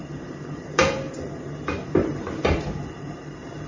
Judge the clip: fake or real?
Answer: fake